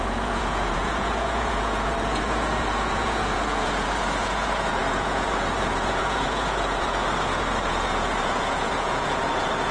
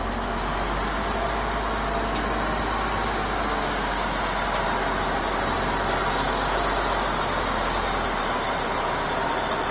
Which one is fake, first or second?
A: first